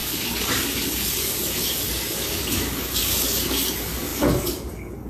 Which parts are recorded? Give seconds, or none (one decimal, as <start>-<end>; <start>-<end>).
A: none